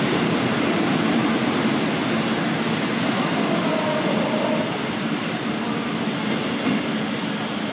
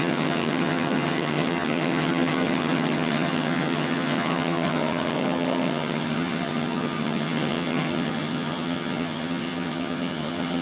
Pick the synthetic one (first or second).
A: second